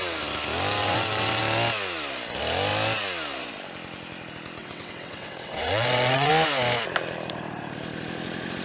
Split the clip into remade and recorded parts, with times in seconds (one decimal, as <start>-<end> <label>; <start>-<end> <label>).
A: 0.0-0.8 recorded; 0.8-1.4 remade; 1.4-4.6 recorded; 4.6-6.3 remade; 6.3-8.6 recorded